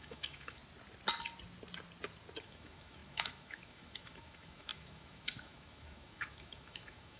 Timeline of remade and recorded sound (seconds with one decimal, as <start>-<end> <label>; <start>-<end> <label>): 0.0-0.6 remade; 0.6-2.4 recorded; 2.4-7.2 remade